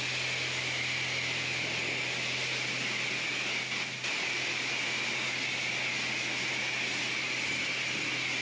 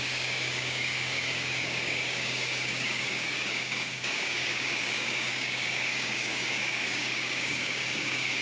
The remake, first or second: second